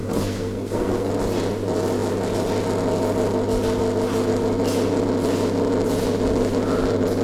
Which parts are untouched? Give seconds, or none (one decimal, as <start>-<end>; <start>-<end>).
1.1-7.2